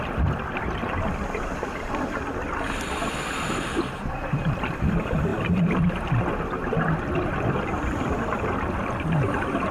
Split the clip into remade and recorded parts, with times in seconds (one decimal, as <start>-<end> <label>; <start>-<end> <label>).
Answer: 0.0-9.7 recorded